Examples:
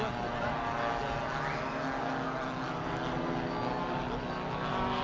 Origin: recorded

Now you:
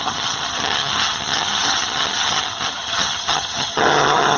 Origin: remade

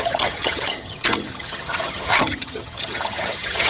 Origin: remade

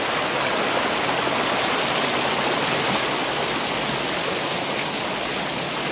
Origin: recorded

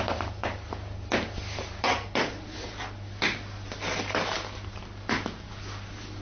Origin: recorded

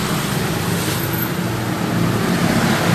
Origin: recorded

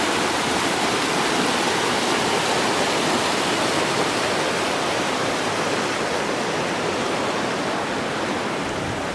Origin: recorded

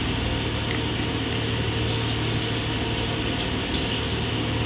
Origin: recorded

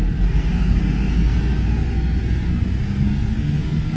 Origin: remade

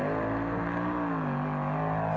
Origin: recorded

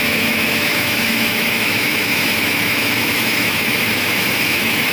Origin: remade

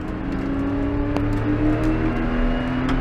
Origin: recorded